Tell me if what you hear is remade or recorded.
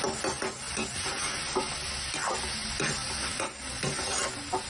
recorded